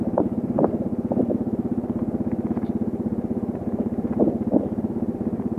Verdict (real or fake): real